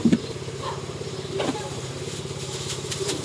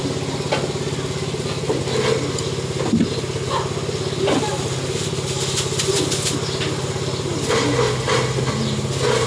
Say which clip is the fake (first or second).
first